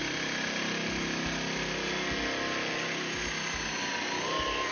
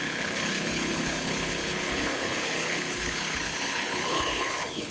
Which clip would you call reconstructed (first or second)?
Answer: second